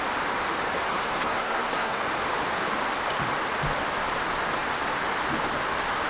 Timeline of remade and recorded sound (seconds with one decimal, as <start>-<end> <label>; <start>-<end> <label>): 0.0-0.9 recorded; 0.9-2.0 remade; 2.0-6.1 recorded